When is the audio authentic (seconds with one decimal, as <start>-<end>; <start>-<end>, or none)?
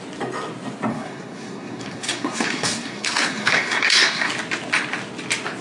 0.0-0.9; 4.3-5.6